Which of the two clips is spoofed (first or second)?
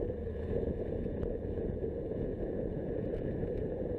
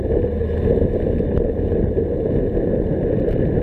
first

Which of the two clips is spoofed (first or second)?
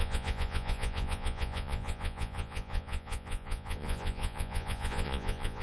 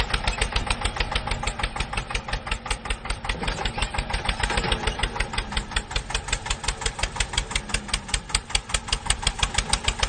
first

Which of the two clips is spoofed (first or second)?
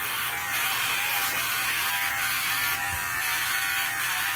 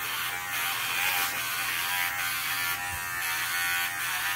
first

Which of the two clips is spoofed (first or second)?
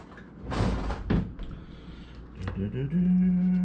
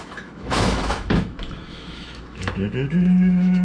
second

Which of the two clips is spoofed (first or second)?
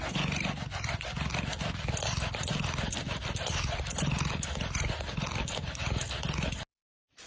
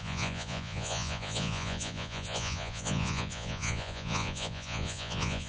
second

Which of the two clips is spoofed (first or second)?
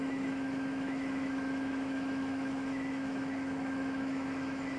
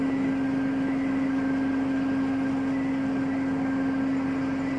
first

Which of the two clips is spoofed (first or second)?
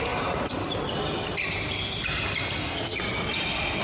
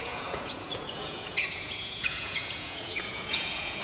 second